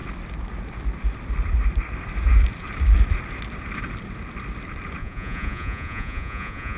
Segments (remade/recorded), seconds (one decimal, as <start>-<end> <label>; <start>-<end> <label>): 0.0-5.0 recorded; 5.0-6.8 remade